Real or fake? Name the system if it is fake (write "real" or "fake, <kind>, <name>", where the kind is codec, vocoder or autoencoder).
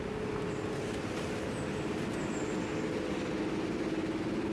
real